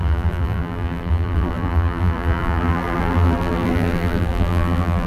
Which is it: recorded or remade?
remade